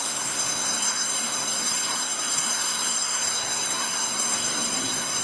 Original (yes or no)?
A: no